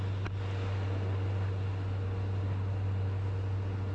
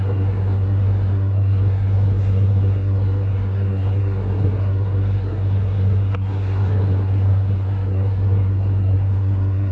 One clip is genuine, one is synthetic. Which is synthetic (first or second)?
second